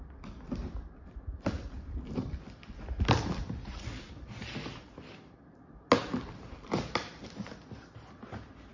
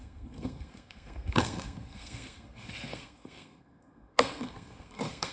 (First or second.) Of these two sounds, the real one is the first